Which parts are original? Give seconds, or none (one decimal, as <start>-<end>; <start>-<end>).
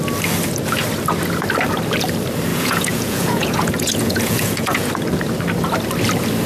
0.0-2.5; 4.9-6.5